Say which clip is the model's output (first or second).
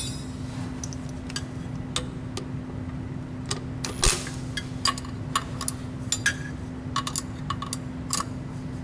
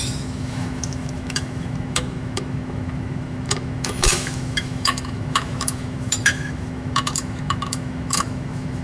second